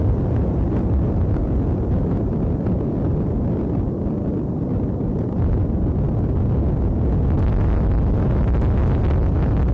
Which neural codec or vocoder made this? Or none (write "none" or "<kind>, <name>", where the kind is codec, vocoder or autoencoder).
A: none